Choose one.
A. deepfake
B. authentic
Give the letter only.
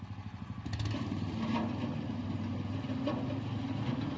B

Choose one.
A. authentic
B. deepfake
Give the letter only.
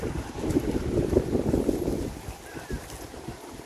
A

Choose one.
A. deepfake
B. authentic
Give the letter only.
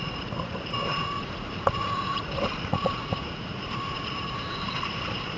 A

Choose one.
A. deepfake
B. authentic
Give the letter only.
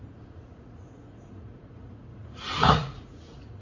A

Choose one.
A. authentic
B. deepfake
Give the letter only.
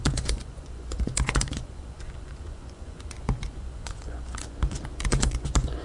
B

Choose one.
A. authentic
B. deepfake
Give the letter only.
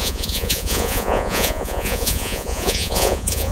B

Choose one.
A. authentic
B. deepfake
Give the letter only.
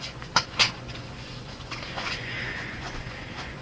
B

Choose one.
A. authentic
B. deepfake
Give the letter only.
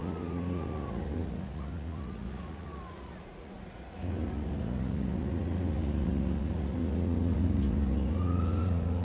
B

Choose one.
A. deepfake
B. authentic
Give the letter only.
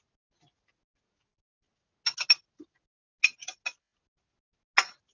B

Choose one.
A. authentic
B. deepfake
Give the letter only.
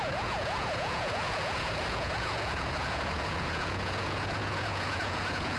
B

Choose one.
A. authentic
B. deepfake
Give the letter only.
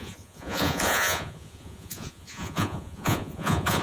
B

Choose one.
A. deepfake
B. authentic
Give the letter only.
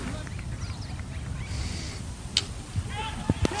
B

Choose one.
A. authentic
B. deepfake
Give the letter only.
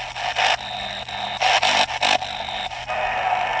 A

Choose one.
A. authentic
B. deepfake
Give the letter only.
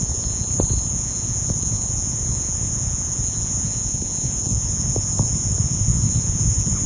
B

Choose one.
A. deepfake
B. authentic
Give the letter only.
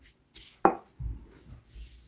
B